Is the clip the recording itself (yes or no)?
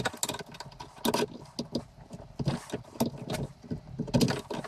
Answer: yes